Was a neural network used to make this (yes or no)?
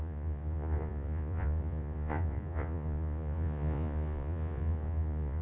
yes